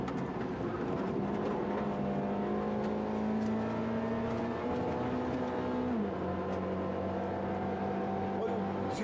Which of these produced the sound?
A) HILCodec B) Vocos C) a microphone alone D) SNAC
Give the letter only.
C